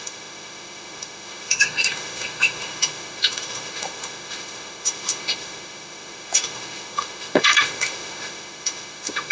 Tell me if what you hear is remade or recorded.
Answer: remade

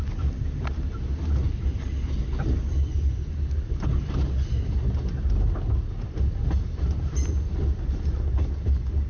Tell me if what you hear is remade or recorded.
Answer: recorded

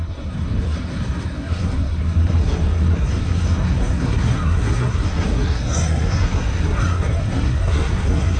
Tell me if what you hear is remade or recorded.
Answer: remade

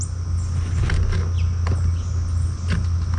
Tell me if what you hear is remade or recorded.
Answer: recorded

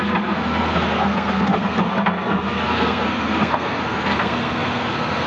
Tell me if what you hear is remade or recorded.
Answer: remade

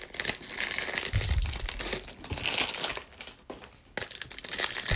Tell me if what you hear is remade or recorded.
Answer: recorded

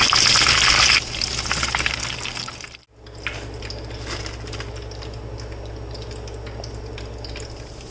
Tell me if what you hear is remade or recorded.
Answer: recorded